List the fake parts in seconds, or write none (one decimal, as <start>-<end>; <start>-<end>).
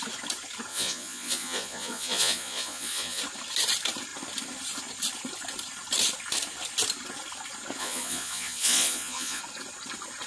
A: 0.7-3.2; 7.8-9.4